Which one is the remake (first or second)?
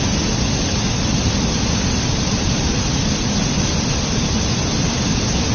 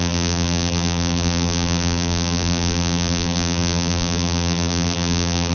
second